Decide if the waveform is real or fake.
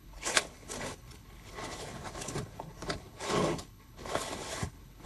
fake